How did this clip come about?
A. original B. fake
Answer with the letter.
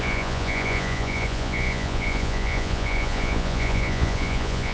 B